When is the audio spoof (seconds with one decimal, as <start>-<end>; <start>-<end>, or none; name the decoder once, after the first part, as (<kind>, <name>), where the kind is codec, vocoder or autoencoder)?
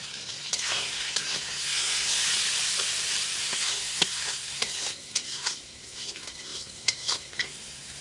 0.0-2.2 (codec, SNAC); 3.4-8.0